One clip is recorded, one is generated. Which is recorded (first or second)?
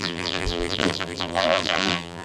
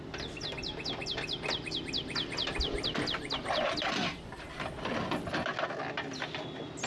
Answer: second